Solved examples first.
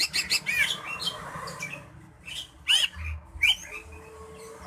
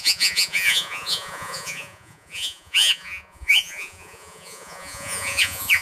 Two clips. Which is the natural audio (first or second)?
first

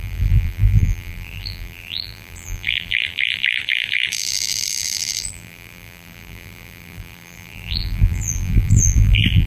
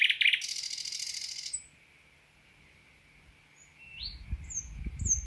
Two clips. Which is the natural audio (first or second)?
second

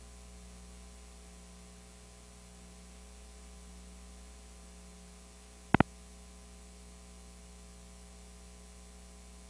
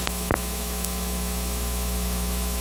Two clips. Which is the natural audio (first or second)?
first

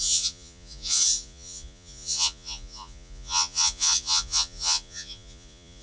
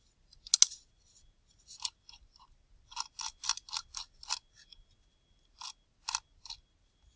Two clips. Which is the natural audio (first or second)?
second